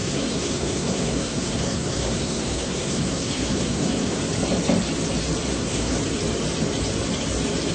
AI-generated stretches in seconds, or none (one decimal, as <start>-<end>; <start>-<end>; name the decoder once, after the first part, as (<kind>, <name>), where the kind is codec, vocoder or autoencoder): 0.0-4.2 (codec, SNAC); 5.5-6.0